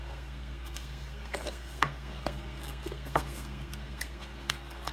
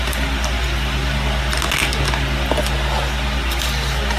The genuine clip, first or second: second